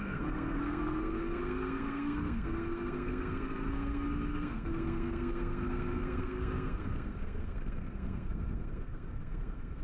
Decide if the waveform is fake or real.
fake